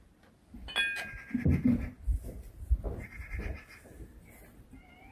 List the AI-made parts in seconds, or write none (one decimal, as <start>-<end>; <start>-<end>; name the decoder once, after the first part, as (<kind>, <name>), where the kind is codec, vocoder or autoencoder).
none